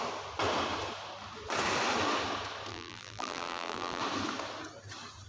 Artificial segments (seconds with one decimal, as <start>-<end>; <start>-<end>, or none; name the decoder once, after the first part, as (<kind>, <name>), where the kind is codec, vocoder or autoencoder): 2.7-4.0 (vocoder, BigVGAN v2)